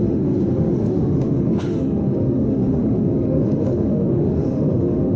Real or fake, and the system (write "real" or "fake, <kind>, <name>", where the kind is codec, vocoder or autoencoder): fake, autoencoder, DAC-VAE